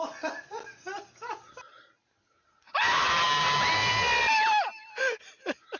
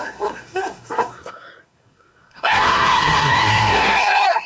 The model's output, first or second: second